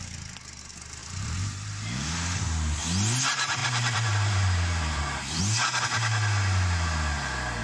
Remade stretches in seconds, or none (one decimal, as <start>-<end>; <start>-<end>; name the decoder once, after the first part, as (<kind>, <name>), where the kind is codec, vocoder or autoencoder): 1.0-2.4 (vocoder, BigVGAN v2); 3.6-5.4